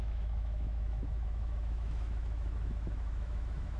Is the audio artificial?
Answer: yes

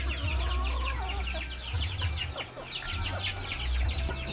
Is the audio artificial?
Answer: no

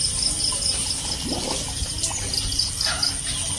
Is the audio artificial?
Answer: no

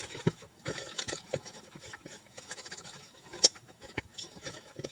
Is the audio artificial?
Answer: yes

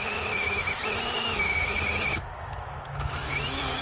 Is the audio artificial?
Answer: yes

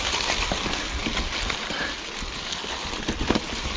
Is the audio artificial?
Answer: no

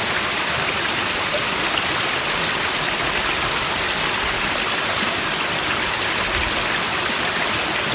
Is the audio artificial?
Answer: no